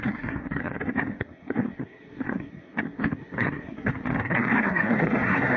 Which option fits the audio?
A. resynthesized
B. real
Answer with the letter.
A